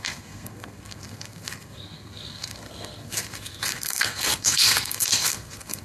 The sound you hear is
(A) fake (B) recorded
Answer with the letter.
A